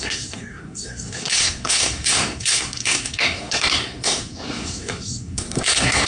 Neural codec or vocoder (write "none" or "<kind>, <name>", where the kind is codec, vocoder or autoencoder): codec, SNAC